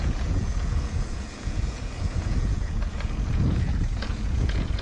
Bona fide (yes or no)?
no